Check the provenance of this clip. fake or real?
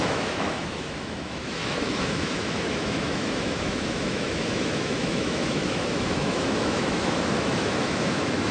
fake